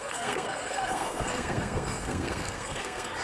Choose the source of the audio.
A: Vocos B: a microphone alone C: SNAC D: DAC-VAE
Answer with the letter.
C